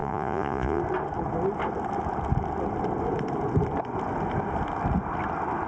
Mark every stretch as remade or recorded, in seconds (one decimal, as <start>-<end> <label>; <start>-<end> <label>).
0.0-0.8 remade; 0.8-5.7 recorded

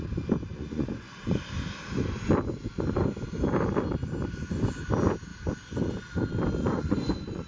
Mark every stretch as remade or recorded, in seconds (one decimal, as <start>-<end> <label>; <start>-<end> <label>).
0.0-0.5 recorded; 0.5-1.4 remade; 1.4-6.6 recorded; 6.6-7.5 remade

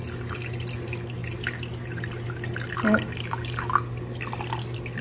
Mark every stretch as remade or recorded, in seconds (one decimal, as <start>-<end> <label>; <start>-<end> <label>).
0.0-5.0 recorded

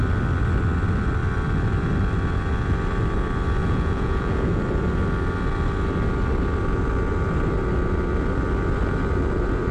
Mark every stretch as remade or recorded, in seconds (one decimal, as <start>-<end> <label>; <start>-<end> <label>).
0.0-3.6 recorded; 3.6-4.6 remade; 4.6-9.7 recorded

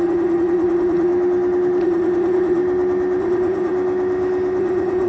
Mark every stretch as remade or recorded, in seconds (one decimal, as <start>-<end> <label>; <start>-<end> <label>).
0.0-1.1 remade; 1.1-1.8 recorded; 1.8-2.6 remade; 2.6-3.2 recorded; 3.2-3.7 remade; 3.7-4.6 recorded; 4.6-5.1 remade

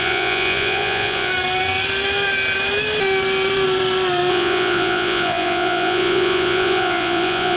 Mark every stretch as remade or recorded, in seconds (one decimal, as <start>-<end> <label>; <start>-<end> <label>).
0.0-1.3 remade; 1.3-4.3 recorded; 4.3-7.6 remade

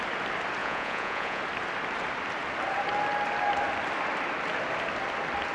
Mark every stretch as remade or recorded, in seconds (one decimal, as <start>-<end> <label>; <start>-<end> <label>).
0.0-0.6 recorded; 0.6-1.4 remade; 1.4-5.5 recorded